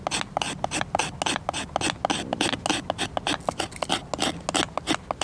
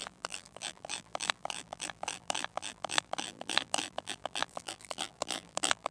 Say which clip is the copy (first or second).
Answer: second